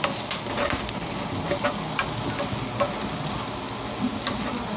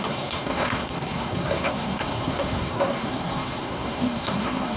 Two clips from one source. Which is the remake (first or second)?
second